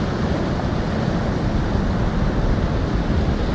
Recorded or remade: recorded